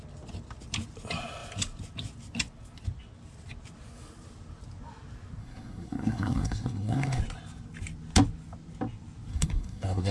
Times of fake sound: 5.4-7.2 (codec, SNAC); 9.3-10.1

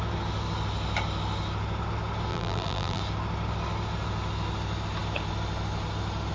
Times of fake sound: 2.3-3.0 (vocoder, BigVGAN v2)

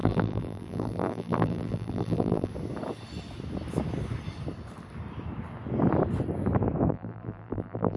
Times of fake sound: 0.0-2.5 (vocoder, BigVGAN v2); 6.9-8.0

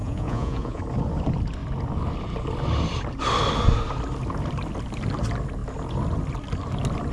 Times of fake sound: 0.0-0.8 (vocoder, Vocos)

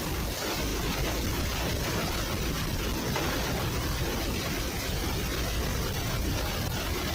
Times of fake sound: 0.0-7.1 (vocoder, BigVGAN v2)

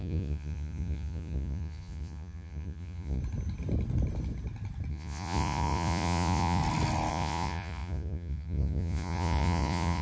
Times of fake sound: 0.0-3.2 (vocoder, Vocos); 4.9-6.6; 7.1-10.0

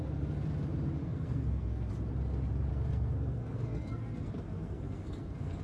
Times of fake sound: 1.0-1.9 (codec, SNAC); 2.7-5.6

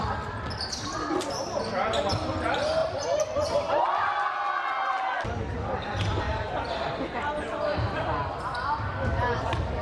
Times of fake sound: none